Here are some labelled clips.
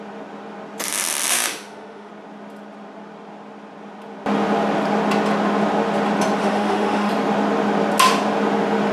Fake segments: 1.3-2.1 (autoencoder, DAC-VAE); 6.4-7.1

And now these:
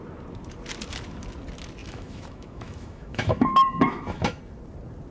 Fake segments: 1.8-4.4 (autoencoder, DAC-VAE)

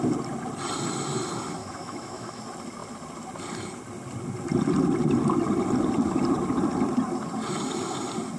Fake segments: 1.6-2.4 (autoencoder, DAC-VAE)

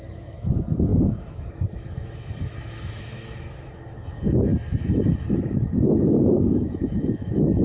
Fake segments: 0.0-4.5 (autoencoder, DAC-VAE); 5.3-7.6

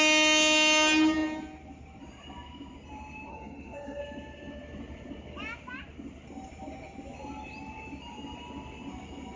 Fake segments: 3.3-4.0 (autoencoder, DAC-VAE)

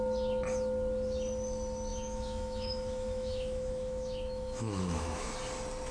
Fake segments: 1.9-5.3 (autoencoder, DAC-VAE)

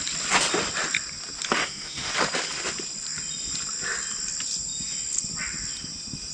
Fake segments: 1.6-2.1 (autoencoder, DAC-VAE)

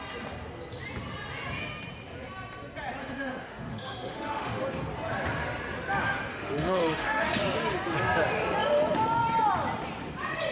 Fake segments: 3.0-4.6 (autoencoder, DAC-VAE); 6.3-7.4